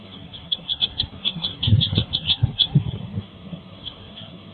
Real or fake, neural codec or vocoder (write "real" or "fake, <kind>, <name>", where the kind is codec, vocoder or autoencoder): fake, codec, SNAC